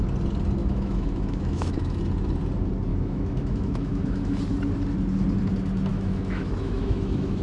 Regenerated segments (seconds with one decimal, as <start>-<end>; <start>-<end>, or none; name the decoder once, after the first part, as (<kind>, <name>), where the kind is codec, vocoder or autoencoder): 0.6-2.0 (autoencoder, DAC-VAE); 2.9-4.4; 5.9-7.4